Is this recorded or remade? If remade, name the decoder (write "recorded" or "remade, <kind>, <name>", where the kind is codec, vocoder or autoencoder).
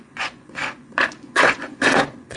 remade, vocoder, Vocos